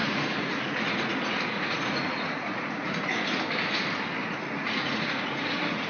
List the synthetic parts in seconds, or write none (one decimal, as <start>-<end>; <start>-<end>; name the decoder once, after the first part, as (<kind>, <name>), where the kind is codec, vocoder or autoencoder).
0.0-3.4 (vocoder, Vocos); 4.2-5.9